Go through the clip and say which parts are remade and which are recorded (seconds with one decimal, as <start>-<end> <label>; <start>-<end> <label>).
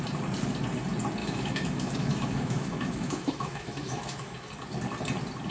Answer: 0.0-1.2 recorded; 1.2-4.5 remade; 4.5-5.5 recorded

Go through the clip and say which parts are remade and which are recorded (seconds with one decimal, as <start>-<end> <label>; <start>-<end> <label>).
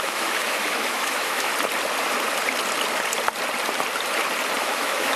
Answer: 0.0-1.5 remade; 1.5-4.6 recorded; 4.6-5.2 remade